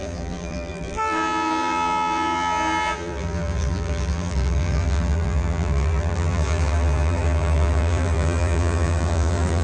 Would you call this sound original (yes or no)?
no